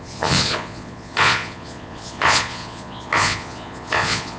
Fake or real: fake